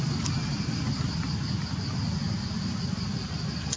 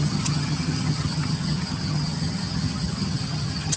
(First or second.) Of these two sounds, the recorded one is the first